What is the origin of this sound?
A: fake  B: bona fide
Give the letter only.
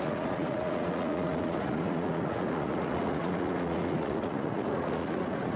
A